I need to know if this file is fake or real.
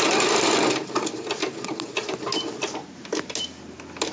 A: real